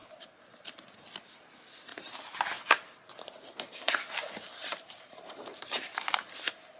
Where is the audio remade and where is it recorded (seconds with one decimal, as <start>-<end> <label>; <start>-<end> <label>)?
0.0-1.9 recorded; 1.9-3.9 remade; 3.9-4.7 recorded; 4.7-6.3 remade; 6.3-6.8 recorded